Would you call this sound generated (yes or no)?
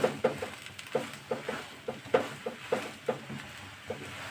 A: no